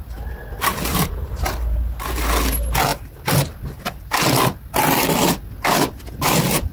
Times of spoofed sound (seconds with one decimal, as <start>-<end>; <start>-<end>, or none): 0.9-1.9